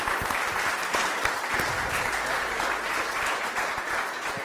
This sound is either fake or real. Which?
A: real